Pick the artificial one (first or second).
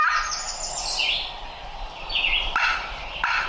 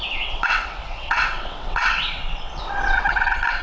second